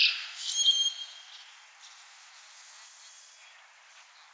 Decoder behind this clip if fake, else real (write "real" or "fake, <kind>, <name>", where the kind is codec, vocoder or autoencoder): real